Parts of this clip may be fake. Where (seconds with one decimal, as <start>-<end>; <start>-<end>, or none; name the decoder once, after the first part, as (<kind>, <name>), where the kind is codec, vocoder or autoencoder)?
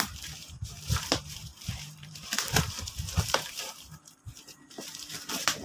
0.0-5.6 (vocoder, BigVGAN v2)